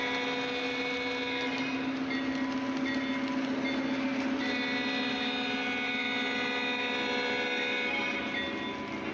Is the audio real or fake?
real